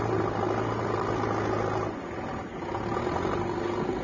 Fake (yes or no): no